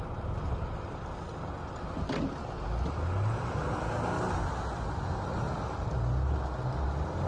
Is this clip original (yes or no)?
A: yes